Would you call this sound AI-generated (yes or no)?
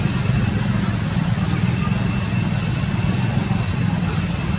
no